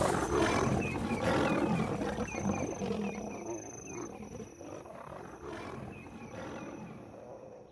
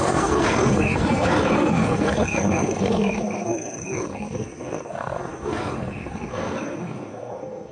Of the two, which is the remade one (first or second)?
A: second